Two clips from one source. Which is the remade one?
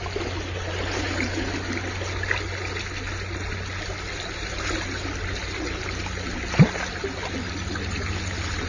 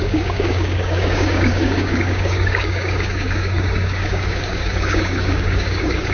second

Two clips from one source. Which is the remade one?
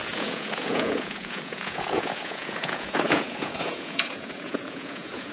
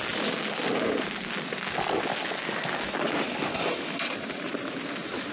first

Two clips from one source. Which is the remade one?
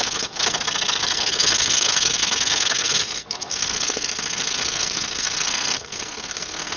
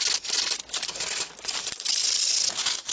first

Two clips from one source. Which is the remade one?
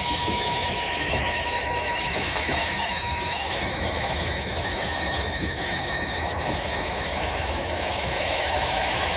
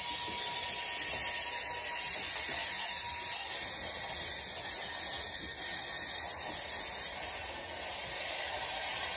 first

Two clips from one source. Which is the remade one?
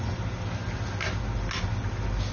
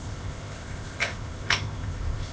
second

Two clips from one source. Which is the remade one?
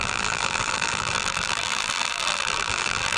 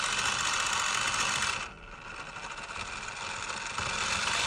first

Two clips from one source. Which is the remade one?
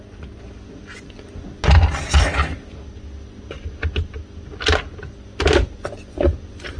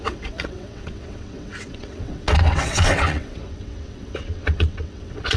second